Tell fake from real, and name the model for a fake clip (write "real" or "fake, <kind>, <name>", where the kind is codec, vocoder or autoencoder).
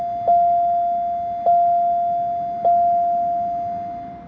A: real